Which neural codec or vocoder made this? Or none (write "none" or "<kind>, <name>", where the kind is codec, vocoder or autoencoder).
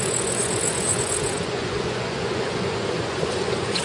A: vocoder, Vocos